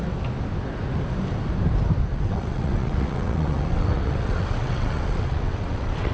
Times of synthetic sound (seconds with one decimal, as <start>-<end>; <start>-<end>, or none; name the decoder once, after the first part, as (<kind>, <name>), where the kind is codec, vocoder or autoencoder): 2.1-6.1 (vocoder, WaveNeXt)